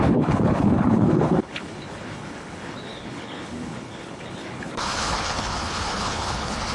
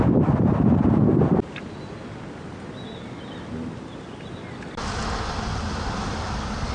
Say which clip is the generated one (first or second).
first